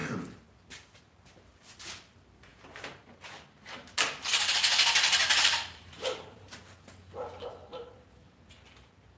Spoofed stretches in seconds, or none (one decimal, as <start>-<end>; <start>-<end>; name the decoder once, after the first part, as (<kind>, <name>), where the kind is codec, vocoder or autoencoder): 2.5-3.2 (vocoder, BigVGAN v2); 5.2-6.6; 7.7-8.5